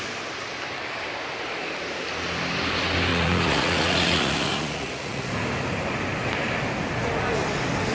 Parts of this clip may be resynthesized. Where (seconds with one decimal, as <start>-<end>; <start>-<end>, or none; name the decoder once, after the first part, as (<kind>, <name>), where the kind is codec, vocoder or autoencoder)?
3.1-5.3 (vocoder, Vocos)